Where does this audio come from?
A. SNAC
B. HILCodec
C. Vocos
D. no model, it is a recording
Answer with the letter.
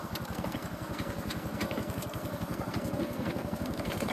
A